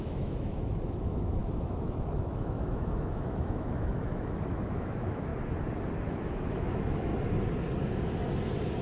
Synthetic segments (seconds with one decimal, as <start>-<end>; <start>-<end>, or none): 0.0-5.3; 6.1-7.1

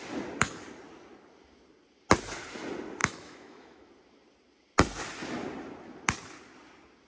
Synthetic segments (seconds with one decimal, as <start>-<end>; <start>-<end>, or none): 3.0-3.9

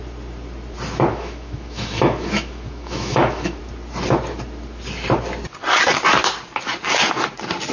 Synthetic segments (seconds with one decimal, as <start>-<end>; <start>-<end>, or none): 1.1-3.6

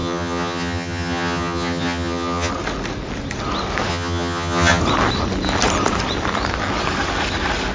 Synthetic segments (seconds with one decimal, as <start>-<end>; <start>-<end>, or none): 0.0-2.5; 3.9-4.8

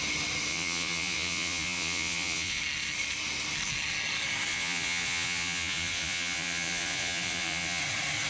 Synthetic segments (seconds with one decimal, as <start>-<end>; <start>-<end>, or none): 0.5-2.6; 4.5-7.8